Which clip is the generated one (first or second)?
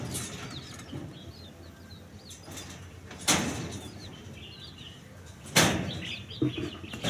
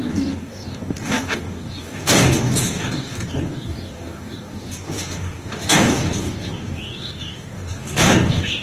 second